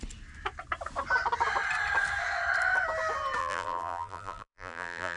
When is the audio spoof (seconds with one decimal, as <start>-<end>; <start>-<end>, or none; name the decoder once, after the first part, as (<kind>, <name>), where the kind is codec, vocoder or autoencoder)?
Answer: 3.4-5.2 (vocoder, BigVGAN v2)